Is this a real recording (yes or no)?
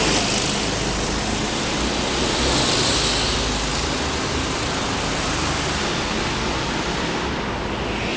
yes